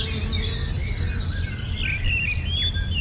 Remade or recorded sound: recorded